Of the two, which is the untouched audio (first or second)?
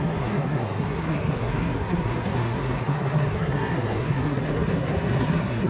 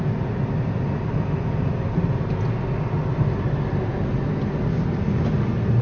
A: second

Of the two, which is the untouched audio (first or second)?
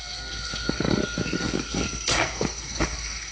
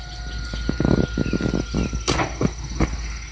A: second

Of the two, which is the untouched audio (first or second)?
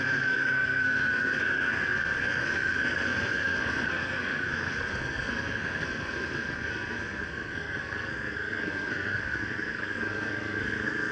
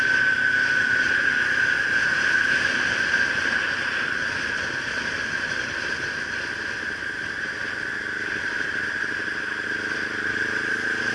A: second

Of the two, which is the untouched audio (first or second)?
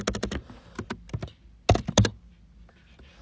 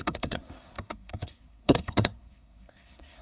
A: first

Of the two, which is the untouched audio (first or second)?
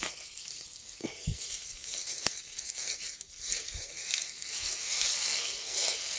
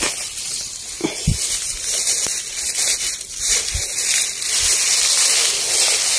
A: second